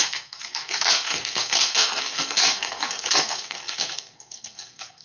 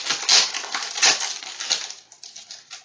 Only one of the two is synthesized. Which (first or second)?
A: first